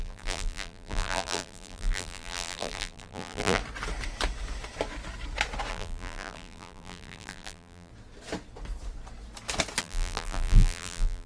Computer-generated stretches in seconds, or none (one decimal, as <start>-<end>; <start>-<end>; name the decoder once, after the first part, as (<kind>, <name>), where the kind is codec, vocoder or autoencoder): 0.0-3.6 (vocoder, BigVGAN v2); 5.7-7.9; 9.8-11.3